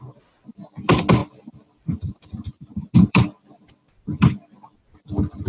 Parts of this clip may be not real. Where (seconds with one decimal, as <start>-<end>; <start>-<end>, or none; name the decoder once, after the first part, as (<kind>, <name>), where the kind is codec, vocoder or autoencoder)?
1.2-4.0 (vocoder, BigVGAN v2)